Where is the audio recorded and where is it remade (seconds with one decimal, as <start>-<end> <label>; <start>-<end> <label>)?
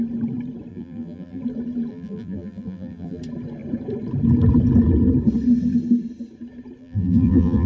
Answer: 0.0-0.7 recorded; 0.7-1.4 remade; 1.4-1.9 recorded; 1.9-3.2 remade; 3.2-6.8 recorded; 6.8-7.7 remade